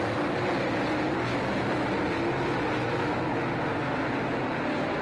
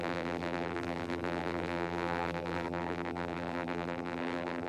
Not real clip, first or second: second